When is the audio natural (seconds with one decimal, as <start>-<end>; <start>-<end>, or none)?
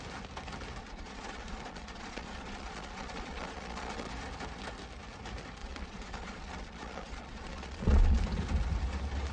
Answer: 0.0-0.8; 4.1-5.6; 8.2-9.3